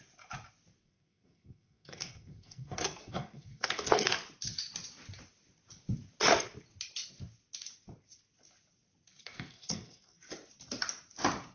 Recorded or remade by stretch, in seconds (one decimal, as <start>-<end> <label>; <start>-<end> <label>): 0.0-0.8 recorded; 0.8-4.2 remade; 4.2-9.2 recorded; 9.2-10.2 remade; 10.2-11.5 recorded